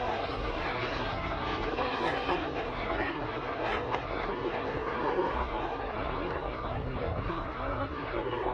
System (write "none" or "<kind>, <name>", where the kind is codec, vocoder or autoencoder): codec, SNAC